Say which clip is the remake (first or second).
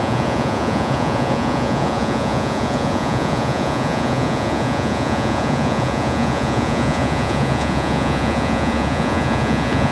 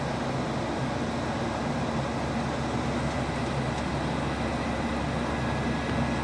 first